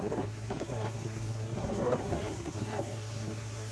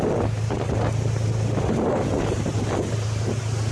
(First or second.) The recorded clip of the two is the second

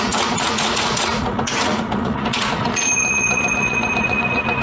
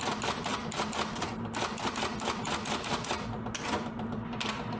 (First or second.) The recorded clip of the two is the second